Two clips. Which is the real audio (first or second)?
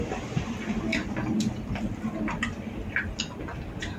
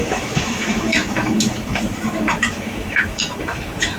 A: first